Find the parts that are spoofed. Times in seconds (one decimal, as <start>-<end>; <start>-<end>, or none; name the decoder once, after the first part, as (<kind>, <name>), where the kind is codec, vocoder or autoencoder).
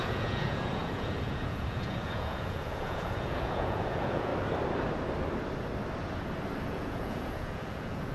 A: 0.0-4.3 (vocoder, Vocos); 6.7-8.1